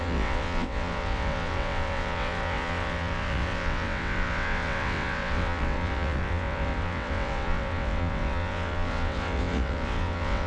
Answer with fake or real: fake